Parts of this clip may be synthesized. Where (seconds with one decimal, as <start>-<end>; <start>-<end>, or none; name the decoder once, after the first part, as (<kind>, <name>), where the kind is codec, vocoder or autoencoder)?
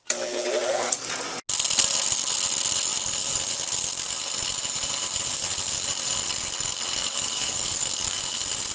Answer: 7.0-8.2 (codec, DAC)